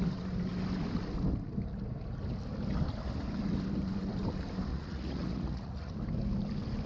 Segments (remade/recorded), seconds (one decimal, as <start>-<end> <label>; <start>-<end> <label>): 0.0-4.7 recorded; 4.7-5.9 remade; 5.9-6.9 recorded